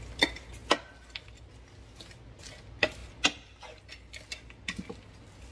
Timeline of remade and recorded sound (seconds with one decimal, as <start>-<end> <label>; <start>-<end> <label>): 0.0-5.5 recorded